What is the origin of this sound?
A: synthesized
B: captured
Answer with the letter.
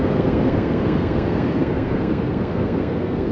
A